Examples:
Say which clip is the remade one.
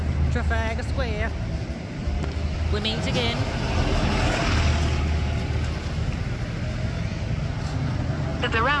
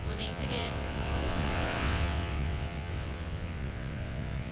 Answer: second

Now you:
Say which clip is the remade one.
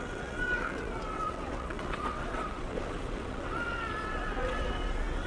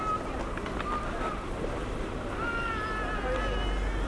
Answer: first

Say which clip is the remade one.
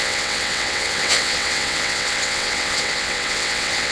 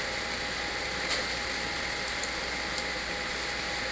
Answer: first